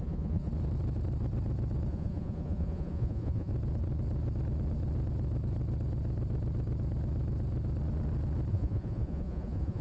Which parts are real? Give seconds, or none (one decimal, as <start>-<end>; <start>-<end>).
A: 0.5-1.9; 3.5-8.5